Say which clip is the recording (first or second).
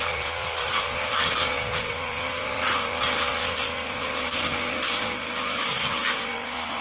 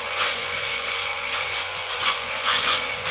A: first